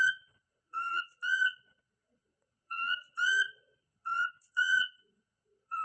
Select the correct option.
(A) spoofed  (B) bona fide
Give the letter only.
A